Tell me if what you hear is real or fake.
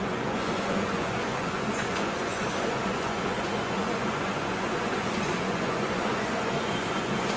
fake